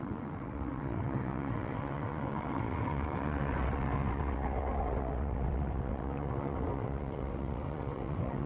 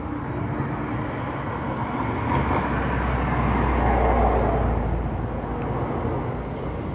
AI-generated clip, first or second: first